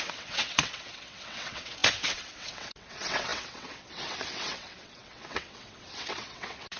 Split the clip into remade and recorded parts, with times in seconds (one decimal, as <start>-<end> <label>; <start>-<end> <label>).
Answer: 0.0-6.8 remade